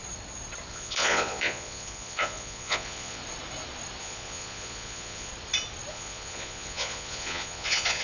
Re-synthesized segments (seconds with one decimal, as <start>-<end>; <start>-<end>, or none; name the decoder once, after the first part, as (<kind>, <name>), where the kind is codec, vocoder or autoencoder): 0.7-3.2 (vocoder, Vocos); 4.0-5.3; 5.9-8.0